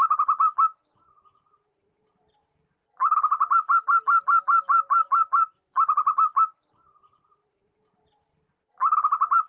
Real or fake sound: real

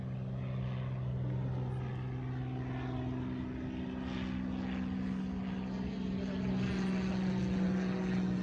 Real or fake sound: real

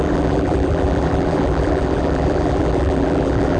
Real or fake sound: fake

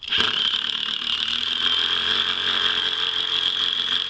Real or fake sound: fake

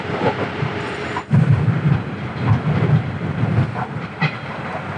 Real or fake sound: fake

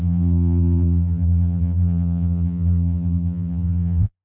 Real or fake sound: fake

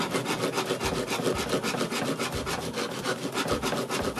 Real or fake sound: real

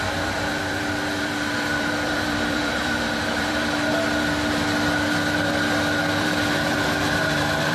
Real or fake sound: fake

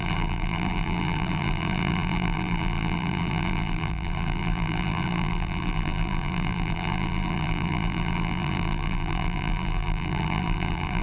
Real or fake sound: fake